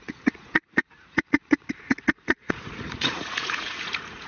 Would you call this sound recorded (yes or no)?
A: no